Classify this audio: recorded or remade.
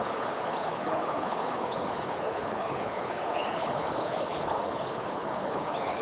remade